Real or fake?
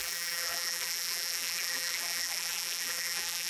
fake